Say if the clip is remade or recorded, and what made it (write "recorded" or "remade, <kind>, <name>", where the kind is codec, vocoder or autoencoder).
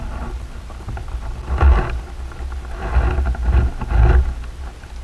recorded